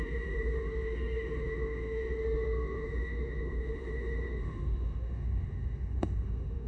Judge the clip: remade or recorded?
remade